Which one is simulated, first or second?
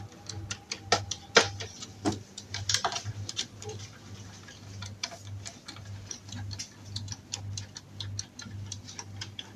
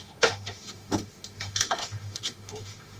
second